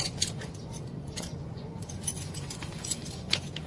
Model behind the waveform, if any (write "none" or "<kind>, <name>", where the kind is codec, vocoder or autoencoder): vocoder, Vocos